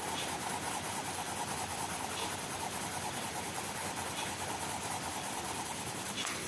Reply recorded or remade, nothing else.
remade